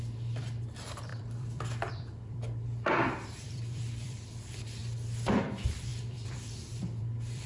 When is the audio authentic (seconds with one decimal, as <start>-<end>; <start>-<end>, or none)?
4.8-5.4